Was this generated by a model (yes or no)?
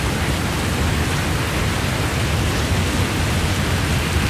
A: no